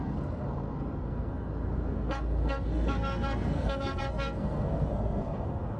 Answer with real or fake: fake